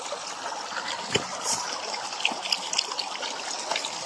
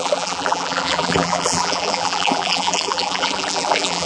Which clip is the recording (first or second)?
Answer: first